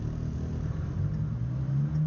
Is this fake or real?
real